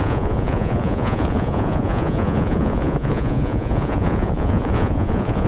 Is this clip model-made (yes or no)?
yes